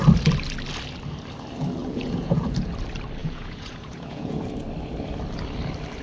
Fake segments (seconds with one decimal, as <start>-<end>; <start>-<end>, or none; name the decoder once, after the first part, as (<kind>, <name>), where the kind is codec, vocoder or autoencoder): 1.8-2.7 (vocoder, Vocos); 3.2-4.4